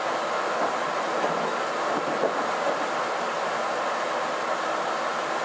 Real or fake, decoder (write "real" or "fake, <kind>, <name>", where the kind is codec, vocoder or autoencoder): real